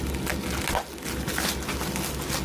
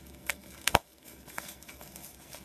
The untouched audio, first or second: first